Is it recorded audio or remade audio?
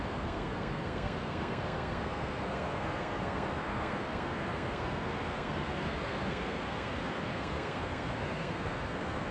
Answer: remade